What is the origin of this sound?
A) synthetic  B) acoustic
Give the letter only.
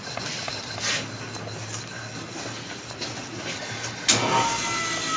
B